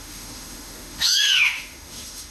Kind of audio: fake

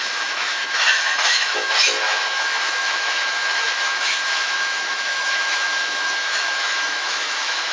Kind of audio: fake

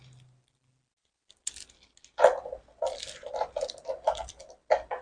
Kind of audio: real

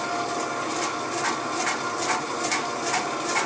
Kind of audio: real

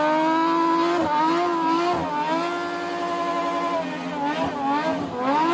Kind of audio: real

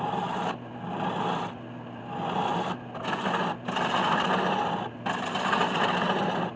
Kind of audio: real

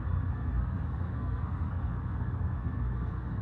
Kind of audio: fake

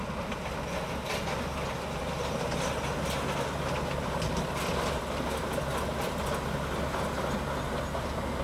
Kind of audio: real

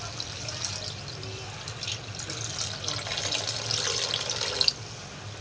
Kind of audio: real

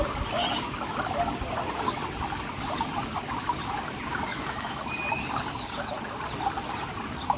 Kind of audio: real